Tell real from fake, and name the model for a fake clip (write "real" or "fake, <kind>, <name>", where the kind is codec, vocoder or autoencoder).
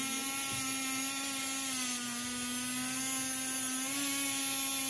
real